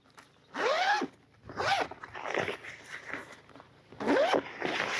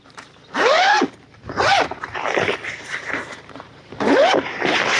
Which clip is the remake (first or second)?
second